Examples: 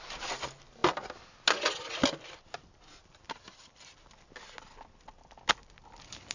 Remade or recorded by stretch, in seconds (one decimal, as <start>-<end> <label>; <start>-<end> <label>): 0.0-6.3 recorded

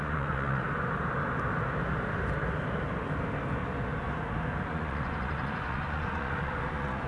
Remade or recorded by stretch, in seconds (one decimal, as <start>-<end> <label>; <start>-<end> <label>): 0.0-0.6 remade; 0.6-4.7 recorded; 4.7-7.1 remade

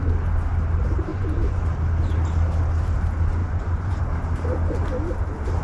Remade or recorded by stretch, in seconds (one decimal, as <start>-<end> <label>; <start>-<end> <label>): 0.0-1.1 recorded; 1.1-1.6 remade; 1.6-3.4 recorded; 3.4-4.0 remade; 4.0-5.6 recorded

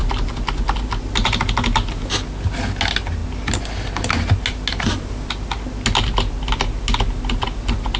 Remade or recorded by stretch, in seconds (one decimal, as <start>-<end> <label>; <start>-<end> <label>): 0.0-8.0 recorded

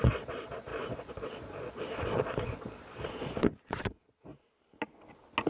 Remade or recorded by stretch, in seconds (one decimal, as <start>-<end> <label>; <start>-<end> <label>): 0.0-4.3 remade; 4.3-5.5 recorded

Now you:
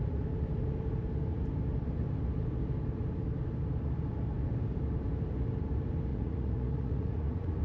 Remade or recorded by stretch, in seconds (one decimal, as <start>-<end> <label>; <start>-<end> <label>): 0.0-6.1 recorded; 6.1-7.6 remade

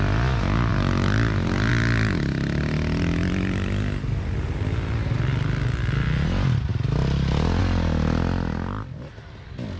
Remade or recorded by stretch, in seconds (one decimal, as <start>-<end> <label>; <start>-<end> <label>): 0.0-9.8 recorded